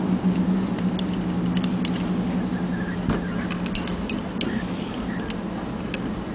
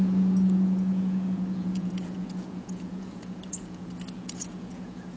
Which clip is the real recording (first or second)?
first